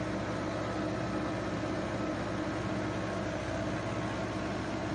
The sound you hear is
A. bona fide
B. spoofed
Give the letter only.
A